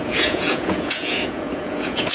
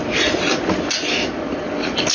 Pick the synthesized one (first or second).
first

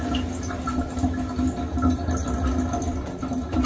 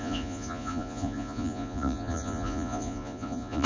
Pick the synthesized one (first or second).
second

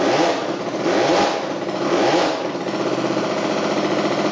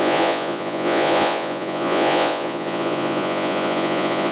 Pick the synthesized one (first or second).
second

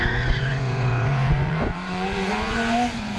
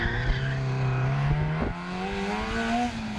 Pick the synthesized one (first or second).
first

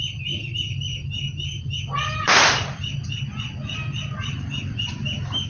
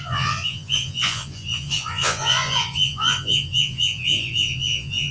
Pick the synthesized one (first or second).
second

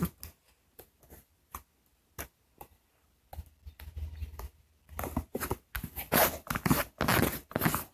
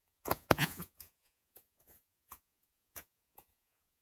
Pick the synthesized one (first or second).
second